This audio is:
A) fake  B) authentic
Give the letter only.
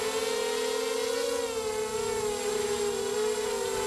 B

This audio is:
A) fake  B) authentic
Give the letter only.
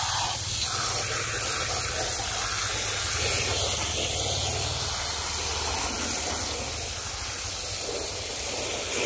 B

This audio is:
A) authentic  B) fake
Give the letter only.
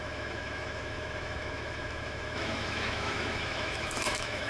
B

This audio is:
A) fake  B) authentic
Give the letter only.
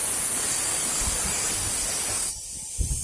B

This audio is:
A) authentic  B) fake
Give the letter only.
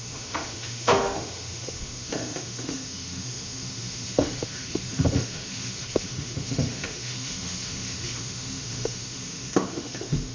B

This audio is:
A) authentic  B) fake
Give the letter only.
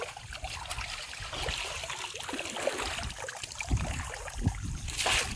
A